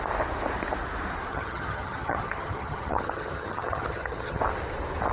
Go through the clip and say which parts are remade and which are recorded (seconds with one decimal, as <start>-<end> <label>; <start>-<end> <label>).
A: 0.0-1.3 recorded; 1.3-4.4 remade; 4.4-5.1 recorded